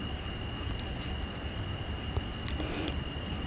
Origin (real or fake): real